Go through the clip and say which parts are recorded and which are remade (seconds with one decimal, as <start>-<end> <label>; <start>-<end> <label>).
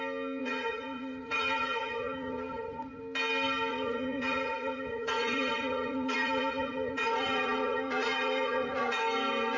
0.0-0.4 recorded; 0.4-3.0 remade; 3.0-3.7 recorded; 3.7-9.0 remade; 9.0-9.6 recorded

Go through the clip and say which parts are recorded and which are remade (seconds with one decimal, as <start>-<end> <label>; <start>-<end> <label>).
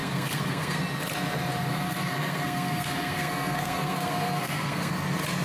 0.0-0.8 remade; 0.8-1.7 recorded; 1.7-4.9 remade; 4.9-5.4 recorded